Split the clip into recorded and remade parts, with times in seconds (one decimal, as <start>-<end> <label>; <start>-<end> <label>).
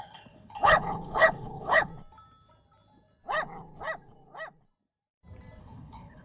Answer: 0.0-1.9 remade; 1.9-5.6 recorded; 5.6-6.2 remade